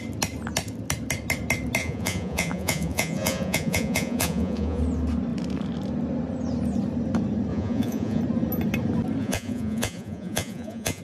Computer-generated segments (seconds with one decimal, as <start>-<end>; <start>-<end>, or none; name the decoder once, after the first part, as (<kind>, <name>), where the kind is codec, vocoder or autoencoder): 1.8-4.8 (vocoder, Vocos); 7.5-8.2; 9.2-11.0